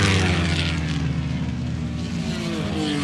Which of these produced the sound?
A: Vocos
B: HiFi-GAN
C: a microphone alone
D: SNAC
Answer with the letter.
C